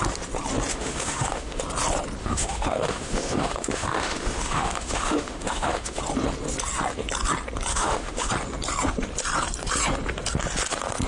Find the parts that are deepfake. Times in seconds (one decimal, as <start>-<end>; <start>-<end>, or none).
0.7-1.6; 2.2-6.0; 7.7-8.3